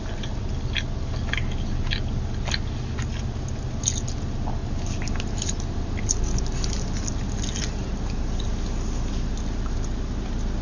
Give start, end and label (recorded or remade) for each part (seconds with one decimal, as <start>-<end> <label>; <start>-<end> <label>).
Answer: 0.0-10.6 recorded